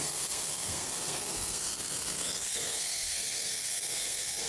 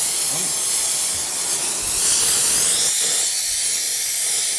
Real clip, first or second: second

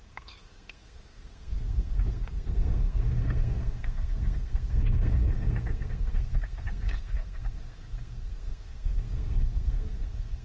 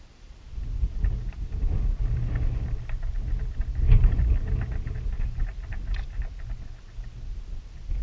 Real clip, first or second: second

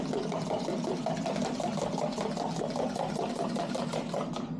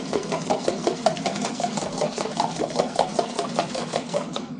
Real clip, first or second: first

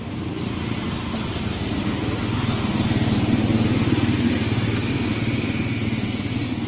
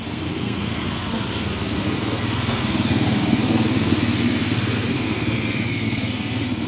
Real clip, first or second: first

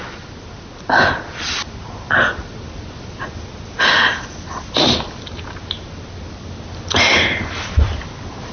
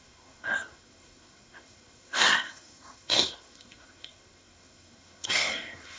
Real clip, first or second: first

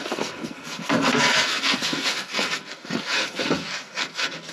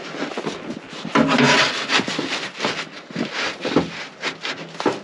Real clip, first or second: second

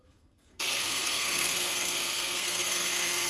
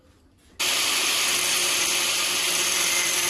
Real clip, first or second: second